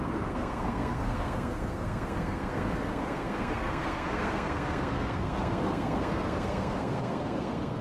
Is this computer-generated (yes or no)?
yes